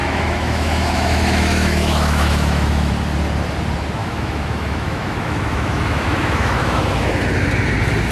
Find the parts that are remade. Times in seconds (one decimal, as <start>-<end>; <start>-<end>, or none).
0.0-2.9; 4.0-7.1